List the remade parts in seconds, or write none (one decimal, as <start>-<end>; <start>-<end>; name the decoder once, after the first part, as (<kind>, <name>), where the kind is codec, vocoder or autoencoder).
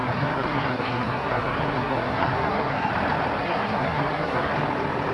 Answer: 0.0-2.9 (codec, SNAC); 3.4-4.5